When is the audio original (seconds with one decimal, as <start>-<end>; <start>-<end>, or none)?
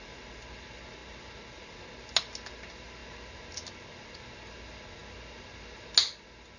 0.0-6.6